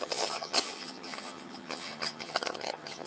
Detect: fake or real fake